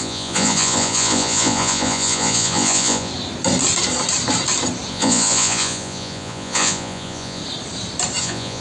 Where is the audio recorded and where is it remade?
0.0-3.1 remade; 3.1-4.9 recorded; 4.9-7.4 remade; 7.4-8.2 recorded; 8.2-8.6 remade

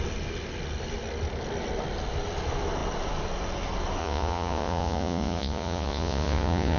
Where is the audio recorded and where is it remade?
0.0-4.0 recorded; 4.0-6.8 remade

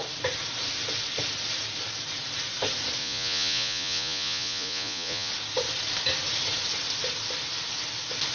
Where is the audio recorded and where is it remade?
0.0-3.0 recorded; 3.0-5.3 remade; 5.3-8.3 recorded

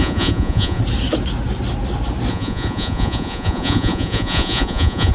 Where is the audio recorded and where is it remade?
0.0-0.8 remade; 0.8-2.3 recorded; 2.3-5.1 remade